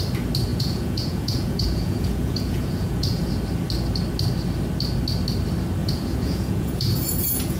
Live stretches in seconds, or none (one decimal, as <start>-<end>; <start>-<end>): 0.0-0.5; 3.3-5.8

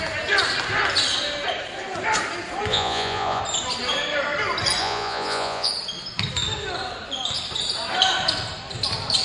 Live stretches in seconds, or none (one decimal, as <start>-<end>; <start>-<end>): 0.0-2.7; 3.4-4.8; 5.7-9.2

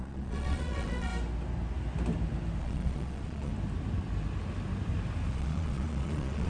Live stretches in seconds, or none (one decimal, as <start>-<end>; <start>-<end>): 1.1-2.6; 3.5-5.3

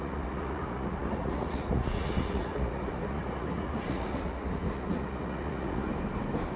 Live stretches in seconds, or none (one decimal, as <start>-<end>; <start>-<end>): 5.9-6.6

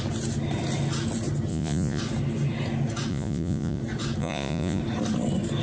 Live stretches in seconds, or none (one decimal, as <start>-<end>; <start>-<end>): 0.0-1.5; 2.0-3.1; 3.8-4.2; 4.8-5.6

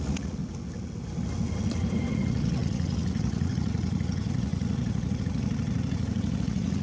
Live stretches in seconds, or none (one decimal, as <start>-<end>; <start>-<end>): 0.4-2.1